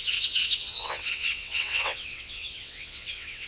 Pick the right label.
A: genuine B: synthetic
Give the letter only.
B